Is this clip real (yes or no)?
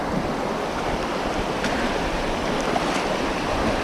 no